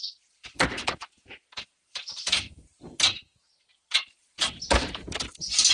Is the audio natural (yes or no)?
yes